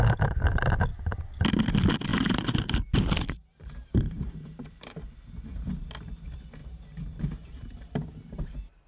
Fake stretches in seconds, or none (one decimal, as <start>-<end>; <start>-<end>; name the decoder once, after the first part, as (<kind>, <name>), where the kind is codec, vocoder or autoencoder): 2.1-5.7 (vocoder, BigVGAN v2); 6.6-8.9